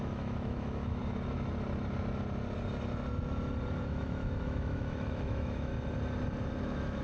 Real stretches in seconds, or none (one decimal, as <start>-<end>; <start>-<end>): 1.0-3.8; 5.7-6.6